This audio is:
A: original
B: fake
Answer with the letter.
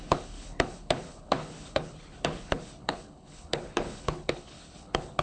B